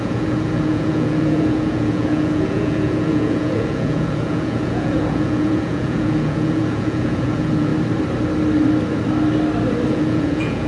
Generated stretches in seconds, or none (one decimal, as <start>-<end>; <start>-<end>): 0.0-7.7; 9.9-10.7